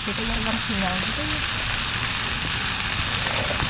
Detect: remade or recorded recorded